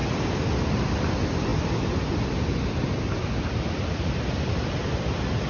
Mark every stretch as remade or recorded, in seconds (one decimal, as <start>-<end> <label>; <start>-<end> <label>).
0.0-5.5 recorded